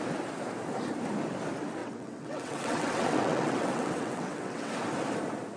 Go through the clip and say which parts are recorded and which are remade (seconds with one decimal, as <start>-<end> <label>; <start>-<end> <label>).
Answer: 0.0-1.8 recorded; 1.8-4.7 remade; 4.7-5.6 recorded